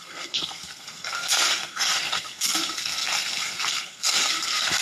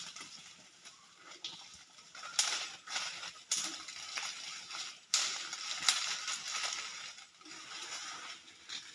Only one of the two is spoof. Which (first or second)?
first